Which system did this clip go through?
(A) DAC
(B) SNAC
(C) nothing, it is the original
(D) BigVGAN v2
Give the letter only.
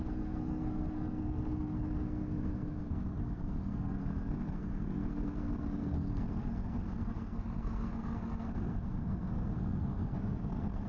B